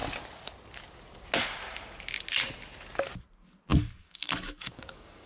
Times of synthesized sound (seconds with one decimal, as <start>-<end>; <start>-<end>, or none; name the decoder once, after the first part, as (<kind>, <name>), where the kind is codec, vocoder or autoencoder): 4.0-5.3 (codec, DAC)